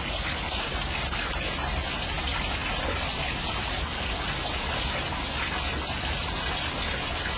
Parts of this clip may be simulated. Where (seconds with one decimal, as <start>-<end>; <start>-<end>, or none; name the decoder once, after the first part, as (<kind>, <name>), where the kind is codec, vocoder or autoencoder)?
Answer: none